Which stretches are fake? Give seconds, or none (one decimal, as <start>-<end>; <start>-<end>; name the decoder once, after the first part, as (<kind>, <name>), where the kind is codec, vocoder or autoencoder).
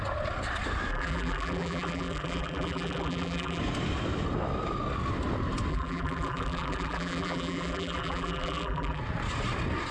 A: 0.9-3.6 (vocoder, BigVGAN v2); 5.7-9.0